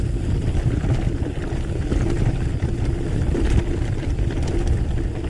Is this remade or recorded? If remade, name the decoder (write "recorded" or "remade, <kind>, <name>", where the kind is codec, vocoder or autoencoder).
recorded